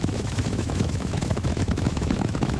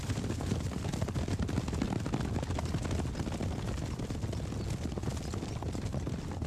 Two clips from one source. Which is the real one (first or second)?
second